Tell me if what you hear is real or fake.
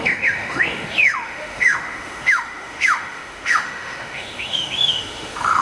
fake